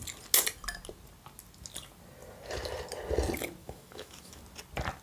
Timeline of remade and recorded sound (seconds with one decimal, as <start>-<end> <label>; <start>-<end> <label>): 0.0-3.6 recorded; 3.6-4.4 remade; 4.4-5.0 recorded